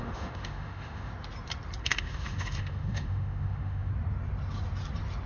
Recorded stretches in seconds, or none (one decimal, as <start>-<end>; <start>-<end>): 1.1-1.8; 3.9-5.3